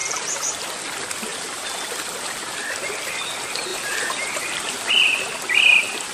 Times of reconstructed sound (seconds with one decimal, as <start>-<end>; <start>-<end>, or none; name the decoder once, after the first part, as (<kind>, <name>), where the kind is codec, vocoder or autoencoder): 0.0-0.7 (vocoder, BigVGAN v2); 1.3-1.9; 3.7-4.9